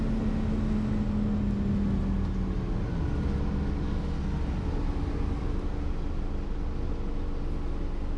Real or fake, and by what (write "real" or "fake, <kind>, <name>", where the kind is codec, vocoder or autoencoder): real